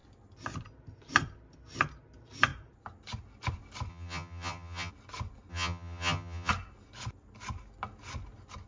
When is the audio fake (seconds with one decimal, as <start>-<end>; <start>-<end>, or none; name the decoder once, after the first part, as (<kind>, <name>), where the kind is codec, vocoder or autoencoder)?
3.9-4.9 (vocoder, HiFi-GAN); 5.5-6.5